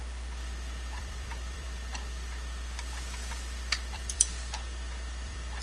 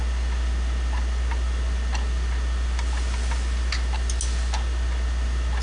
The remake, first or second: first